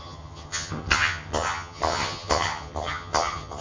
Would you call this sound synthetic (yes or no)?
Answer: yes